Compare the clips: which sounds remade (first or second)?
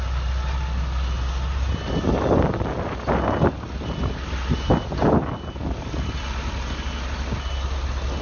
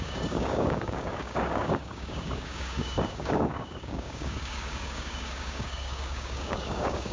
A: second